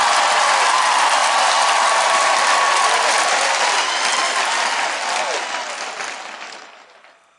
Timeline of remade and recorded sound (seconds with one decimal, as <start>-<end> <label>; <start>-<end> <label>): 0.0-7.4 recorded